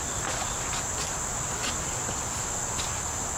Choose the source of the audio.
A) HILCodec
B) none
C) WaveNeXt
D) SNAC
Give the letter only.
B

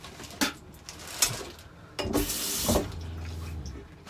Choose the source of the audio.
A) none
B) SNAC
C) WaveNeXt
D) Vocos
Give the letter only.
A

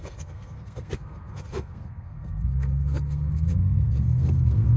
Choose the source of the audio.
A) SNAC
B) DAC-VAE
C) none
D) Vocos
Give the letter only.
A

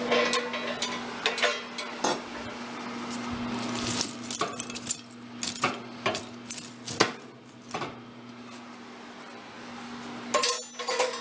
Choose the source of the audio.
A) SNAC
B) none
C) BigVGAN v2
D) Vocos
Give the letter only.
B